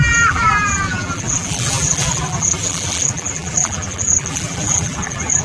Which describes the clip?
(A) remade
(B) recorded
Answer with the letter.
A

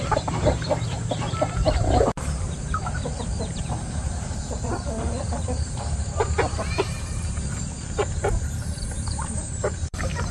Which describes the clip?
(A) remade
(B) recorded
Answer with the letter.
A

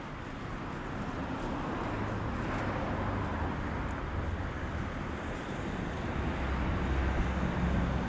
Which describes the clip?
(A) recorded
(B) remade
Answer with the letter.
A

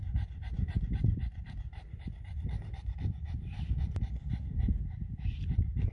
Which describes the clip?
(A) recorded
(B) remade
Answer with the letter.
B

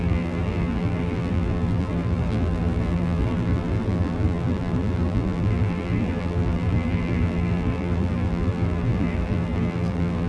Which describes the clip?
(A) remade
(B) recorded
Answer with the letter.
A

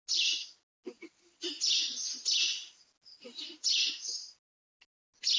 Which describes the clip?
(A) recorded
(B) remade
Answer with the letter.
A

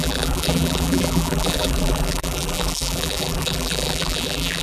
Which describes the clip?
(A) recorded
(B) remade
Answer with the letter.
B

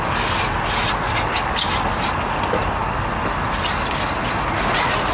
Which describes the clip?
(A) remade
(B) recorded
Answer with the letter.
B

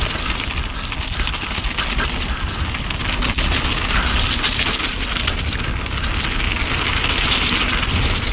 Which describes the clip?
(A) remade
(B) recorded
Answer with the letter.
B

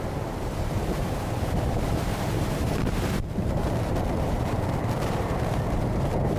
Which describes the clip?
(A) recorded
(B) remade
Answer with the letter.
B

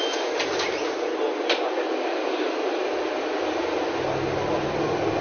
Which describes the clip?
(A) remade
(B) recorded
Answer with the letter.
B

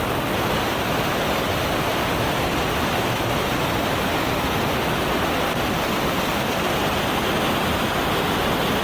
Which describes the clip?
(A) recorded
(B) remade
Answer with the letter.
A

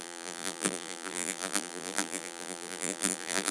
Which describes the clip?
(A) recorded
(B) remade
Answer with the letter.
B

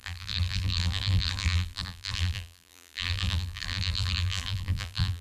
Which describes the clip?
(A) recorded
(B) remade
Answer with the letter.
B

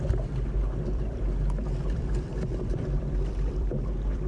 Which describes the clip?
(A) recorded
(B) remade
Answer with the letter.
B